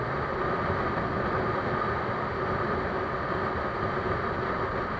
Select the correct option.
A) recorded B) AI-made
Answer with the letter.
A